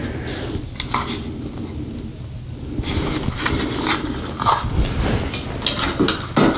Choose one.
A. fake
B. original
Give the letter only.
B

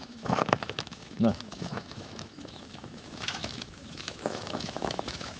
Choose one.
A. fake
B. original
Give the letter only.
A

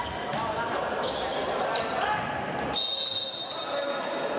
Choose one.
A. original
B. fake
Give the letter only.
A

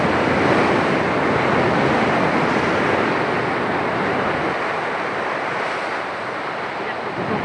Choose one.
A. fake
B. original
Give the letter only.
B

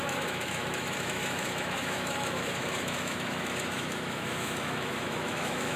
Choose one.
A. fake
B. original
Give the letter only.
A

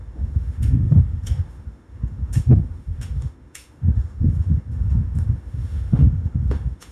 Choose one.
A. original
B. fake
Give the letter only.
B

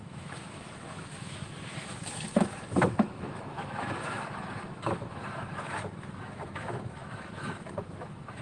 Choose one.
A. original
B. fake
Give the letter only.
B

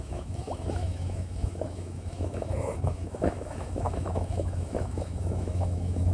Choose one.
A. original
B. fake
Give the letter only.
B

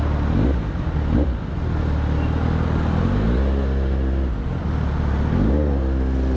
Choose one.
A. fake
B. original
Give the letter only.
B